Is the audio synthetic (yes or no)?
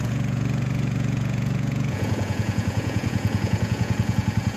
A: yes